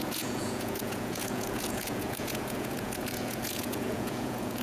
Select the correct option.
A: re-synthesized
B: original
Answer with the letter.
A